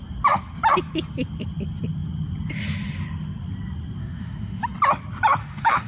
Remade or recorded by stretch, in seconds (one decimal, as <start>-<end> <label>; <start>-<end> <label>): 0.0-4.0 recorded; 4.0-4.6 remade; 4.6-5.4 recorded; 5.4-5.9 remade